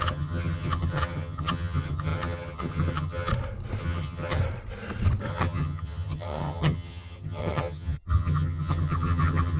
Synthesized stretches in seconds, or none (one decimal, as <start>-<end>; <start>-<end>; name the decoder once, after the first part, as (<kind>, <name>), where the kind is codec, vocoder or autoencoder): 0.0-3.3 (vocoder, HiFi-GAN); 3.8-4.4; 5.3-9.6

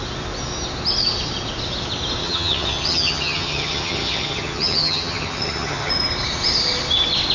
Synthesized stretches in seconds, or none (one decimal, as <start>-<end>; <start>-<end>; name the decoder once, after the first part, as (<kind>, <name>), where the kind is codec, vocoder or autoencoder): 2.2-5.9 (vocoder, HiFi-GAN)

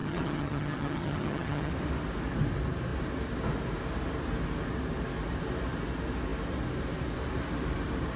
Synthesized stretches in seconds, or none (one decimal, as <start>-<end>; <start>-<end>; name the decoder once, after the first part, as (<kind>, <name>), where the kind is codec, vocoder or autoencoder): 0.0-1.7 (vocoder, HiFi-GAN)

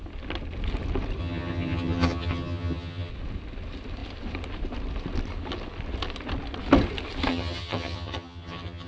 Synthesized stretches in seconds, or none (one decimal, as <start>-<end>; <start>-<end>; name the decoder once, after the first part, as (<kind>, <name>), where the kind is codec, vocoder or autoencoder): 1.2-3.1 (vocoder, HiFi-GAN); 7.3-8.9

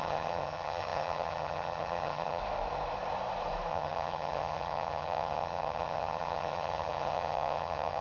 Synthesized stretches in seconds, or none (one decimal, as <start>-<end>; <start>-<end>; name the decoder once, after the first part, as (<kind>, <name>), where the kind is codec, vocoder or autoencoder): 0.0-2.4 (vocoder, HiFi-GAN); 3.7-8.0

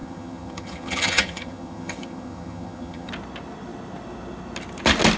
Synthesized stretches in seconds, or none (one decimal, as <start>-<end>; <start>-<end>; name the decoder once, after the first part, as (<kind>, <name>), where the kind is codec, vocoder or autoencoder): 0.0-3.1 (vocoder, HiFi-GAN)

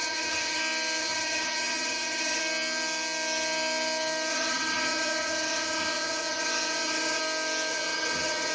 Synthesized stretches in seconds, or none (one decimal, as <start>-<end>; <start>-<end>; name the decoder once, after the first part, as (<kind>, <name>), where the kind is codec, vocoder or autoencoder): 0.0-0.6 (vocoder, HiFi-GAN); 1.0-2.4; 4.3-7.2; 7.7-8.5

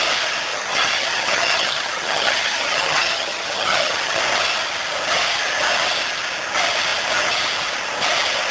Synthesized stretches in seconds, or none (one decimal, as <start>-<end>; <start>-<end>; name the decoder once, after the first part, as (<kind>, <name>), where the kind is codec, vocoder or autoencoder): 0.5-4.2 (vocoder, HiFi-GAN)